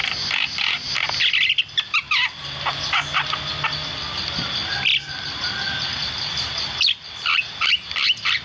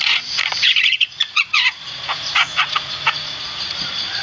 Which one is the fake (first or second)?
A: second